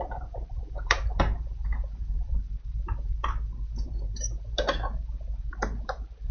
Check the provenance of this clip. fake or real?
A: fake